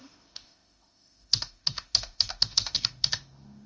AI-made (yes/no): yes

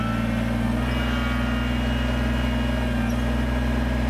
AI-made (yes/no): no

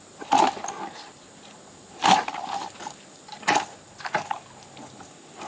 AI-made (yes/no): no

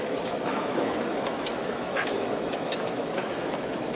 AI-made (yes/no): yes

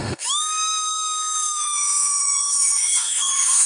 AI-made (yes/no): yes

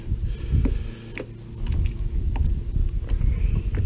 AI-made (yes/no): no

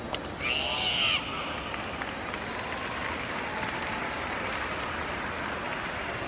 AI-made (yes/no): no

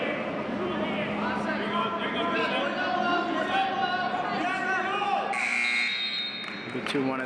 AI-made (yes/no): no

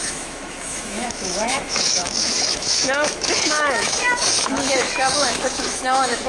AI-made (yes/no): yes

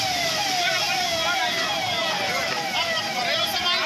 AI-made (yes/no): no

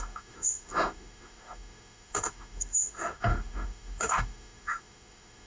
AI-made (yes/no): yes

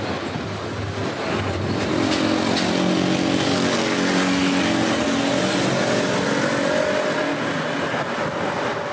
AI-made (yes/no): no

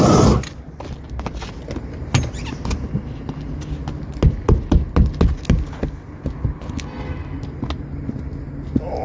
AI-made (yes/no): no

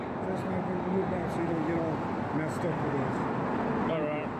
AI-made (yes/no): no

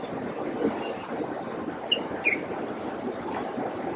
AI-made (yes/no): no